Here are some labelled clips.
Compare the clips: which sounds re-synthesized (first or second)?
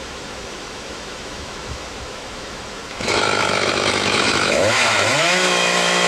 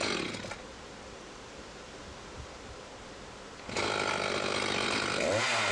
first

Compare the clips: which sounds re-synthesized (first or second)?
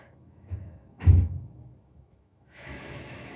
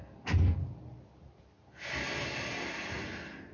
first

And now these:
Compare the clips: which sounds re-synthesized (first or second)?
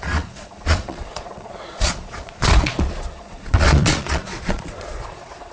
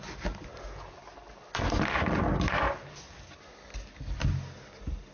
first